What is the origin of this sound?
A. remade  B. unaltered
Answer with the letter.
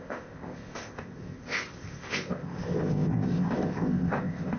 A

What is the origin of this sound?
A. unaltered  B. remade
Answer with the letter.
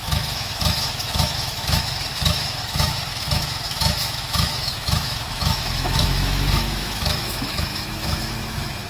B